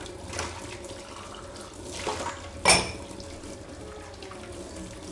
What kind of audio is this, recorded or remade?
recorded